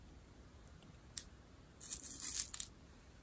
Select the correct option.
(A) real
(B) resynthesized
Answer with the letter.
A